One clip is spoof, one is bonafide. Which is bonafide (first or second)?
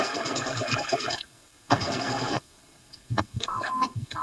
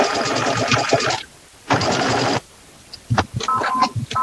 second